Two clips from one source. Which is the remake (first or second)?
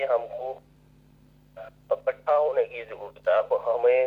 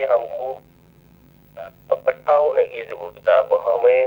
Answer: second